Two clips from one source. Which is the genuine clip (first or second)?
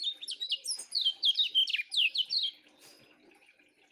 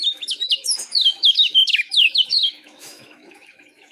first